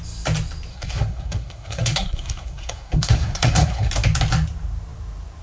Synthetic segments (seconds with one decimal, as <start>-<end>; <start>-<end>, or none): 0.7-3.9

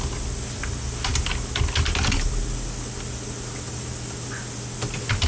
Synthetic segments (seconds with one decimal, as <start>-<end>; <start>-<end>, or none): none

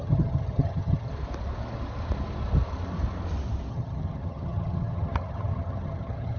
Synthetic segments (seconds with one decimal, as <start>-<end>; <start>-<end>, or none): 0.0-1.1; 3.7-6.4

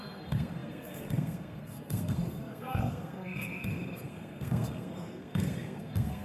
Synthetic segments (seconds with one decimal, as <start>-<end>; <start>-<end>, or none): 0.0-6.2

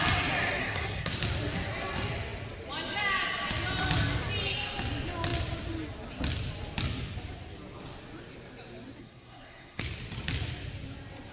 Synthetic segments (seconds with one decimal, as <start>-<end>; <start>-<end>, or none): 0.6-1.1; 9.0-9.8

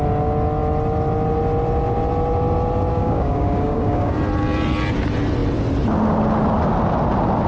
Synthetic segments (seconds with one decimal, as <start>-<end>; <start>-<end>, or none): 2.9-4.1

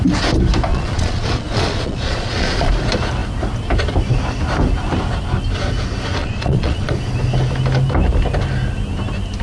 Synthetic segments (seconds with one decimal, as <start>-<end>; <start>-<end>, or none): 0.7-2.7; 6.2-6.9